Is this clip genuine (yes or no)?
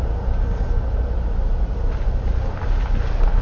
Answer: yes